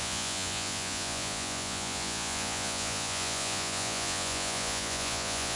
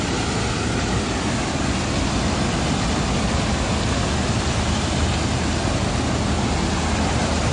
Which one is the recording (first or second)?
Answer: second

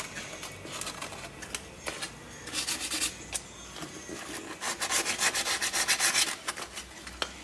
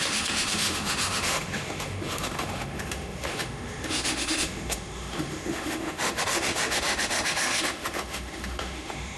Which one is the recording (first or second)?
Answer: first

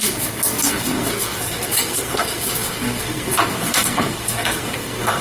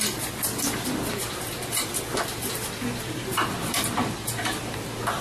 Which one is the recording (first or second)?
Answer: second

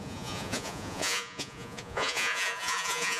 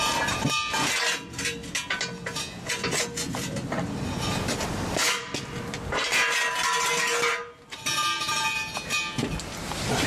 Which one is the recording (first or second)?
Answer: second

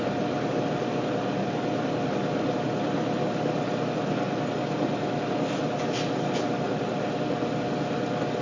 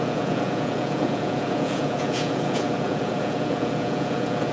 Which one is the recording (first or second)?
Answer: first